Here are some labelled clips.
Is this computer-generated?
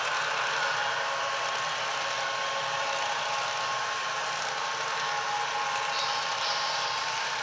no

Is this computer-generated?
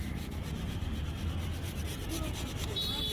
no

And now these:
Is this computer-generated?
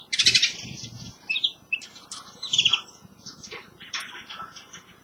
yes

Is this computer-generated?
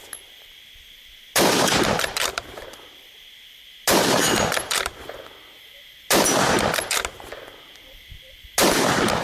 no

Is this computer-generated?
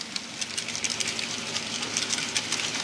no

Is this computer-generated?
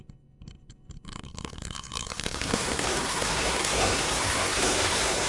yes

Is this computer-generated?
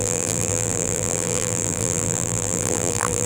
yes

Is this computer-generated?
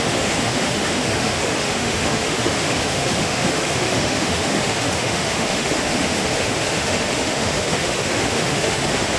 yes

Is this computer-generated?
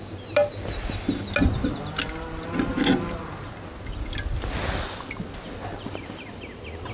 no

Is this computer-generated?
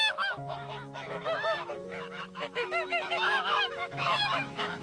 yes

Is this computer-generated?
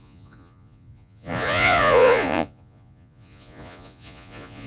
yes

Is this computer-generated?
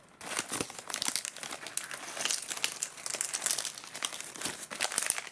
no